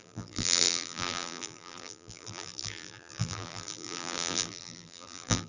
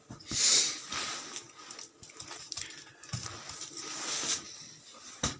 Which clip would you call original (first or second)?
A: second